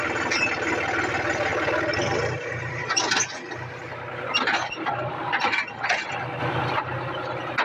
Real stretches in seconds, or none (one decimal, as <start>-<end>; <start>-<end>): 0.0-7.6